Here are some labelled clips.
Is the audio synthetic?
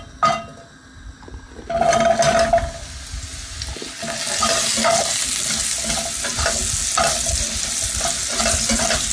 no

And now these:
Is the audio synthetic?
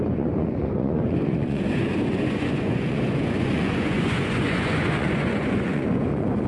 yes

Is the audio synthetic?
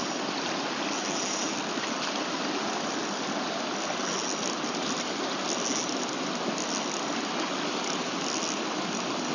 no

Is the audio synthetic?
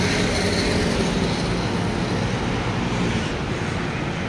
no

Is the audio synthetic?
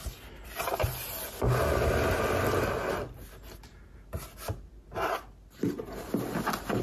no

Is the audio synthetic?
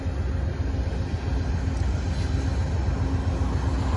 no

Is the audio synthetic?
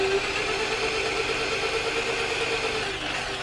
no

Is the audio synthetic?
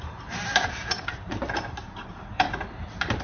yes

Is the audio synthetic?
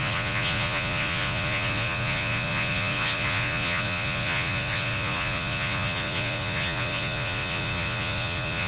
yes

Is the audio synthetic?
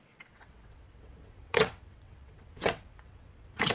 yes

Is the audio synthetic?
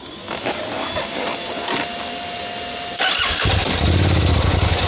no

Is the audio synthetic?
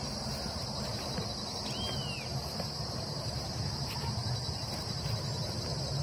no